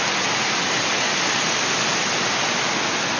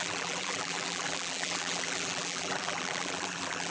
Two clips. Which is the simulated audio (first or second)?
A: second